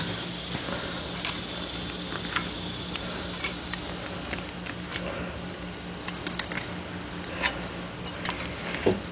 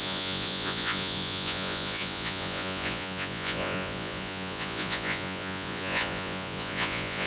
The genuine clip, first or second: first